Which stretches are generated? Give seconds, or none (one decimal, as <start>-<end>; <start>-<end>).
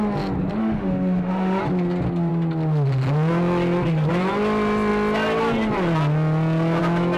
0.6-1.6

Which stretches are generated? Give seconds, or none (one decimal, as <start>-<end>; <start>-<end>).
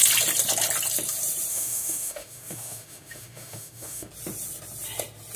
1.5-4.1